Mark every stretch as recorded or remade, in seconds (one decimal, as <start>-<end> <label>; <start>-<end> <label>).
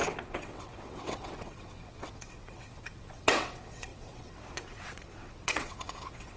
0.0-6.4 remade